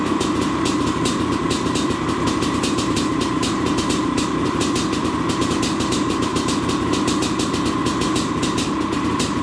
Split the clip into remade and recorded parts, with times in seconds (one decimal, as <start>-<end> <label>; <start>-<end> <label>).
0.0-6.3 remade; 6.3-7.8 recorded; 7.8-9.4 remade